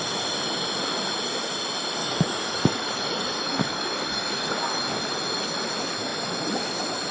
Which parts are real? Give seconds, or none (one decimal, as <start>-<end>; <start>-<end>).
0.0-2.0; 4.5-7.1